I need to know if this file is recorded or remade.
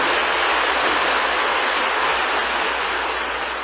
recorded